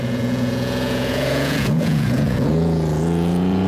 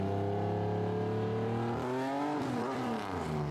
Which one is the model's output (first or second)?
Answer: first